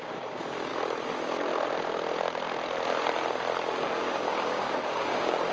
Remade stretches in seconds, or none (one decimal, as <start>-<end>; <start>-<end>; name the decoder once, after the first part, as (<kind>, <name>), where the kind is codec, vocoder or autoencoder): 0.0-0.7 (codec, DAC); 4.0-5.5